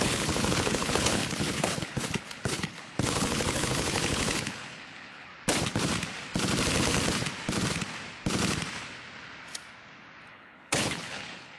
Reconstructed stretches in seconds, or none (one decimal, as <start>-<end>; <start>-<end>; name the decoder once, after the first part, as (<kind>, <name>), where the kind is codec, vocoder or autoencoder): 0.0-5.3 (codec, HILCodec); 10.3-11.6